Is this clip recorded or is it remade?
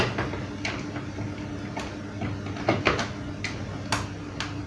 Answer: recorded